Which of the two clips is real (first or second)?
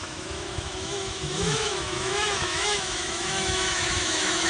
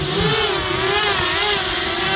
second